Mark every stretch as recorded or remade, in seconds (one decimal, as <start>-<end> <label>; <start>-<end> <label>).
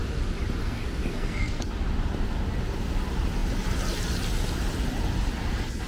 0.0-0.6 recorded; 0.6-1.6 remade; 1.6-5.9 recorded